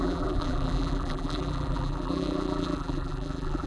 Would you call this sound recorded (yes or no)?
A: no